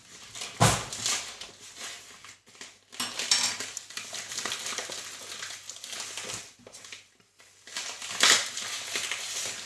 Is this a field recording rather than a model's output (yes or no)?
yes